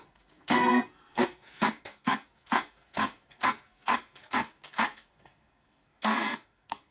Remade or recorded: remade